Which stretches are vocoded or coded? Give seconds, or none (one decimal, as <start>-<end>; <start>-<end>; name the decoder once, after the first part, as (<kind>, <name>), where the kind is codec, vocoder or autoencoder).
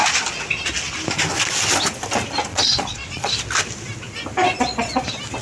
2.5-3.3 (vocoder, Vocos)